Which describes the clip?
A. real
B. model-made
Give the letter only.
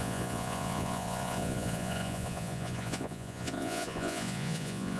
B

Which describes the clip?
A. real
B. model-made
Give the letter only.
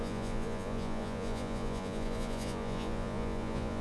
B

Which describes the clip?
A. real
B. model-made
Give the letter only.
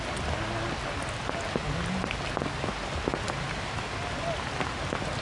A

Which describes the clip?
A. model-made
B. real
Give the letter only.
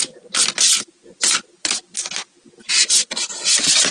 B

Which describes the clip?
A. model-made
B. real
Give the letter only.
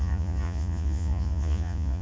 A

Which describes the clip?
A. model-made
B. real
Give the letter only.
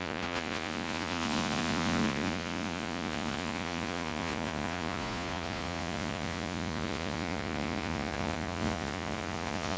A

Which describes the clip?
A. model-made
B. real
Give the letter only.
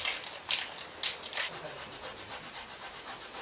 B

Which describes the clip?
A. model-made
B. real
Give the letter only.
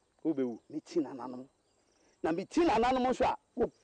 B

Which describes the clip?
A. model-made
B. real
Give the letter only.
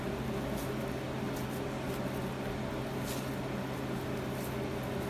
B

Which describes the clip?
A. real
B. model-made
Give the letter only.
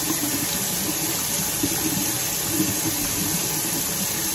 A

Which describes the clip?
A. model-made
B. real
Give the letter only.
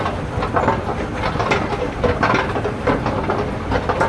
B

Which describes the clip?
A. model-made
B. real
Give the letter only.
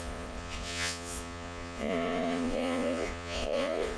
A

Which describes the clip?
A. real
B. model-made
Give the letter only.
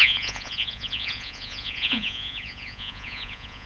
B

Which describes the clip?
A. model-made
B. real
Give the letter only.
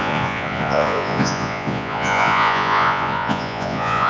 A